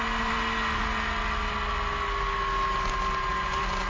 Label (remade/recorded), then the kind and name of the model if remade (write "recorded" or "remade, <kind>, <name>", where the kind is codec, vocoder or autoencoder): recorded